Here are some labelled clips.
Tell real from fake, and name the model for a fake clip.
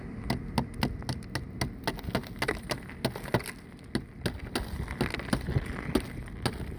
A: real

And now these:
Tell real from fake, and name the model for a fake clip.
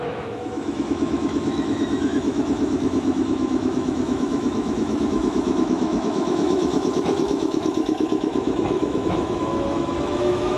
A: fake, autoencoder, DAC-VAE